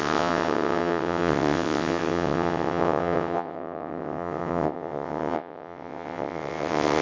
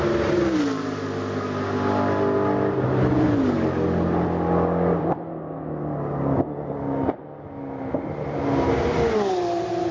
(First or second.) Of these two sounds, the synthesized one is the first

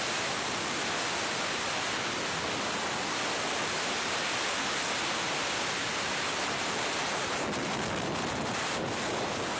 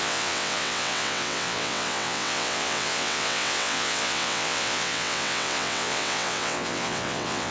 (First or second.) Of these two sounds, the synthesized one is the second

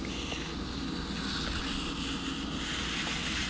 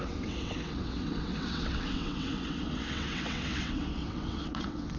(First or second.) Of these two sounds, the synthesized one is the second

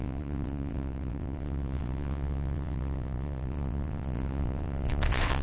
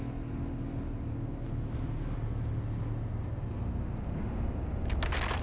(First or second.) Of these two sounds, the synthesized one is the first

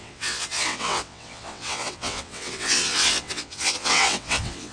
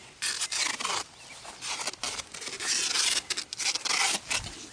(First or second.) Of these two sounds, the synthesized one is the first